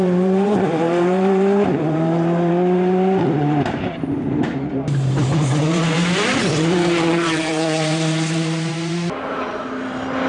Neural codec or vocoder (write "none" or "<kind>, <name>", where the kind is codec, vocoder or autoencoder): vocoder, BigVGAN v2